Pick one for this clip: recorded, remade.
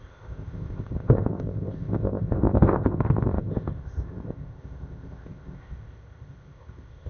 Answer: remade